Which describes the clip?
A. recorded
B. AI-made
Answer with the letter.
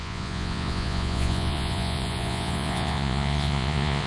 B